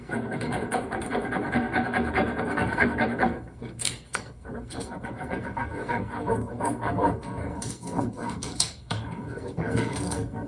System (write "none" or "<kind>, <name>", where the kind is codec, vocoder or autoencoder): codec, SNAC